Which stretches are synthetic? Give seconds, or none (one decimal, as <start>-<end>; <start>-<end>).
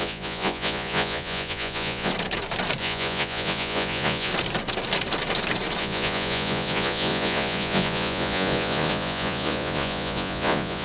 0.0-2.1; 2.8-4.3; 5.8-10.8